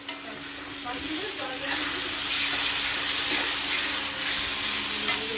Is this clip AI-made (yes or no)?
no